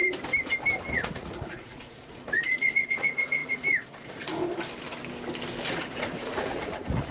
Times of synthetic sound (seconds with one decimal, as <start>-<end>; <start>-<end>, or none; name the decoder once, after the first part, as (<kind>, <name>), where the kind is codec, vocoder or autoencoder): 0.9-4.4 (vocoder, Vocos); 5.7-7.1